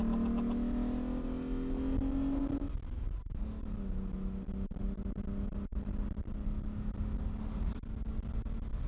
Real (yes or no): yes